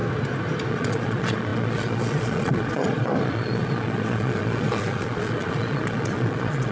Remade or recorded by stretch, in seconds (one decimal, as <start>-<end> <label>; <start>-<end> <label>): 0.0-0.7 recorded; 0.7-6.7 remade